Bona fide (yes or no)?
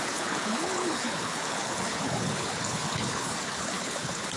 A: no